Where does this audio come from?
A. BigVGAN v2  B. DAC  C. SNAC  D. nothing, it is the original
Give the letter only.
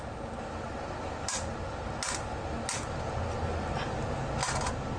D